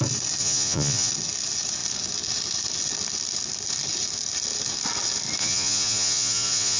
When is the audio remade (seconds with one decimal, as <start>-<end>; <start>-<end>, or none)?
0.4-1.1; 5.4-6.8